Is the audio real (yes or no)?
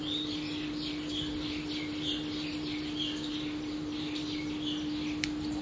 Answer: yes